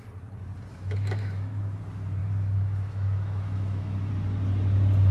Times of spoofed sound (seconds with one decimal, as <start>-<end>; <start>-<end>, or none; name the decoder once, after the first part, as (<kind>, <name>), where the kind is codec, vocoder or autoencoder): 0.7-1.8 (autoencoder, DAC-VAE); 2.2-4.1